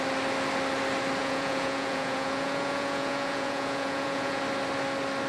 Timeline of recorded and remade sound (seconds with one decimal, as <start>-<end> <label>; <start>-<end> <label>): 0.0-1.2 recorded; 1.2-4.4 remade; 4.4-5.3 recorded